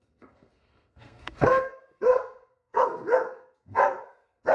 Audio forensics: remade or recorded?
remade